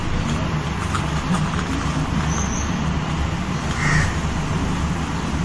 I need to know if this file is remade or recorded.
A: recorded